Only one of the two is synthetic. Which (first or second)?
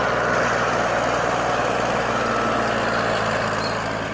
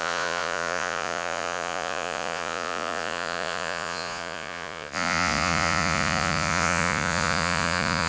second